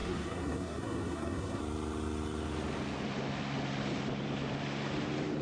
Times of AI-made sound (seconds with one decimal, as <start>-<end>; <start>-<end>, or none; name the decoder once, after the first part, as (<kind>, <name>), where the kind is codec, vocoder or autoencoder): 0.0-1.6 (codec, SNAC)